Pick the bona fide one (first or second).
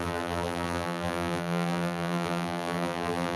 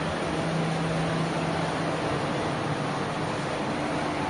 second